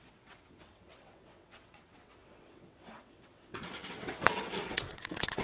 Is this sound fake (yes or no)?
yes